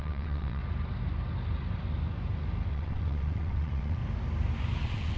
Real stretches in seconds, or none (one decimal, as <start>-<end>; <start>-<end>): 0.6-2.7; 4.0-4.8